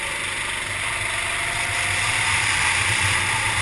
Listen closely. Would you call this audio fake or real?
real